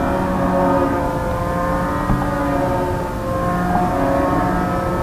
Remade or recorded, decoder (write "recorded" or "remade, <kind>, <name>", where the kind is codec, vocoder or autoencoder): recorded